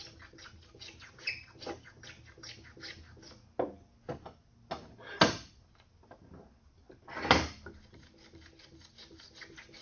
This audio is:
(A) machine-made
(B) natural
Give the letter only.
B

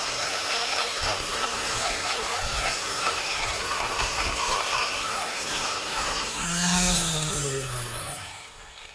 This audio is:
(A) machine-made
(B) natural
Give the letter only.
A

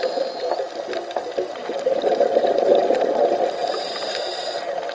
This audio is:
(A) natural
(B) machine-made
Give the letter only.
A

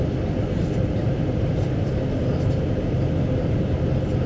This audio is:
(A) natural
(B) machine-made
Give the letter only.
A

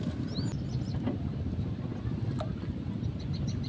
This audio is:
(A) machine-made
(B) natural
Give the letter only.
B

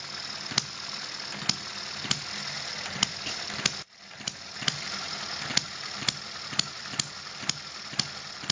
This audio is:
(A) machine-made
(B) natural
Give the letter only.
B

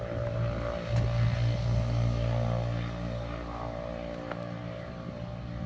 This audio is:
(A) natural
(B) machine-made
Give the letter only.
A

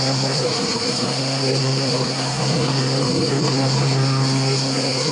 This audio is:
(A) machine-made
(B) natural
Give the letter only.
A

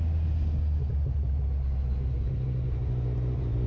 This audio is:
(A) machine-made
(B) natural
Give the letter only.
B